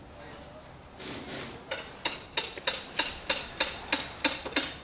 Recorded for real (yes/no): yes